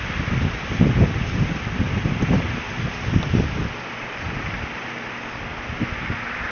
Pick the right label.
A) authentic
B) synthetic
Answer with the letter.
A